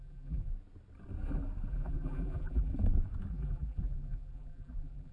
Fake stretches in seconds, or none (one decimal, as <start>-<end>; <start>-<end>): 0.0-0.5; 1.7-2.7; 3.3-5.1